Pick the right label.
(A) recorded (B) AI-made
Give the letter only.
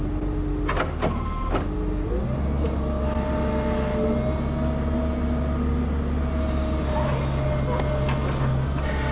A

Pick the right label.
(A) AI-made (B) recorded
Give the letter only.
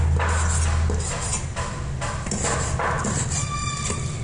B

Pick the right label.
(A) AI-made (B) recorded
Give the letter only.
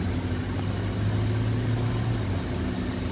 B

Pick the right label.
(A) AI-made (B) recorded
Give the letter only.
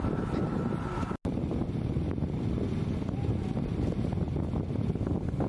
B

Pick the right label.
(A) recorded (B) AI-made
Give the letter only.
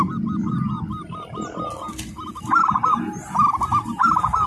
A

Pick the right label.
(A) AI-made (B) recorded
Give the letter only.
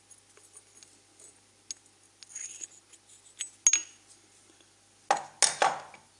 B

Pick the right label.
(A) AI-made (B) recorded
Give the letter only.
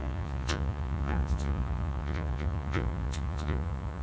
A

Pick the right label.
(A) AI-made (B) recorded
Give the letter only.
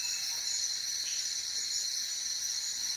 B